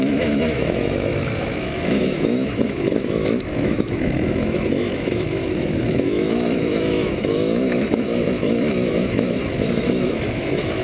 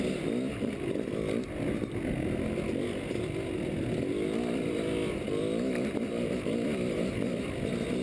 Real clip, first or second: second